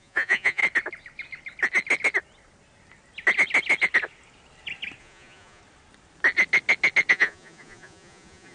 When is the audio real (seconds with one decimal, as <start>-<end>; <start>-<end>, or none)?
0.6-5.0; 5.6-7.1